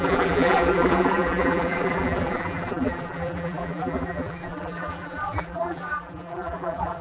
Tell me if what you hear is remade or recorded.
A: remade